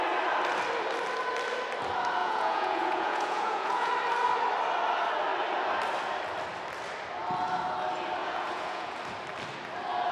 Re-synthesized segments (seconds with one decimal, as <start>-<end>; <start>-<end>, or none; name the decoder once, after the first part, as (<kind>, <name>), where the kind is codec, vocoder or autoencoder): 2.2-3.9 (vocoder, Vocos); 8.2-9.0